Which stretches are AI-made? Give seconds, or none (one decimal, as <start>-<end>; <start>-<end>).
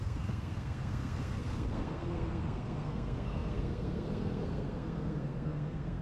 0.0-6.0